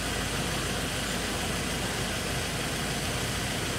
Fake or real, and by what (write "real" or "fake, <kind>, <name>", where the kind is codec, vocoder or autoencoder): real